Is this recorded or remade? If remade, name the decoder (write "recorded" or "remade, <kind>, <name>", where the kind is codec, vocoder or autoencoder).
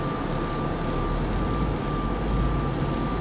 recorded